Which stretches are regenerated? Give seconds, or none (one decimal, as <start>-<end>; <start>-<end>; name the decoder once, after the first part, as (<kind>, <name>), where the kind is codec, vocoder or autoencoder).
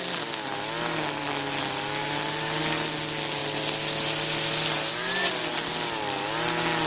none